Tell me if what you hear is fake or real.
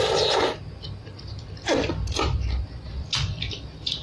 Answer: real